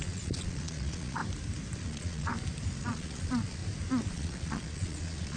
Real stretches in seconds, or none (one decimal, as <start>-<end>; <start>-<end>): 1.2-1.8; 2.3-2.8; 3.6-4.1